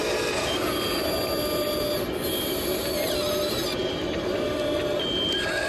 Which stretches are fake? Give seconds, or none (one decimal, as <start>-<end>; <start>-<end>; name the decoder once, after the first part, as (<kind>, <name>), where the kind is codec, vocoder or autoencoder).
none